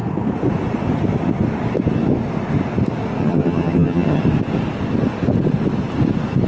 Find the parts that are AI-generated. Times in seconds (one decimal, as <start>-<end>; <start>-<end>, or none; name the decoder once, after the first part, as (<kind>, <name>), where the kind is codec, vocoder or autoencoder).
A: 3.2-4.2 (vocoder, HiFi-GAN)